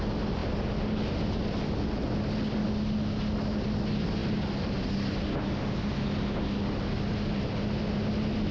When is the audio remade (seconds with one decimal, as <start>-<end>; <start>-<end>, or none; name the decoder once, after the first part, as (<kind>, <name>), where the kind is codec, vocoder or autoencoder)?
none